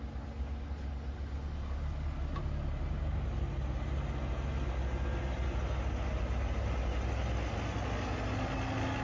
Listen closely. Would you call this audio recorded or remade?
recorded